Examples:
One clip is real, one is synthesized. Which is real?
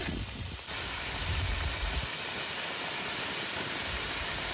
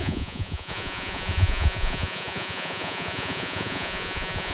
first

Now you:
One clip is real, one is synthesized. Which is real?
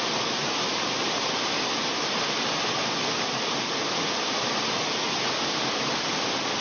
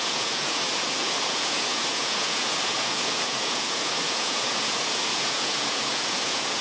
first